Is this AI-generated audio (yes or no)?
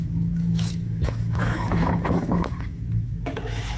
yes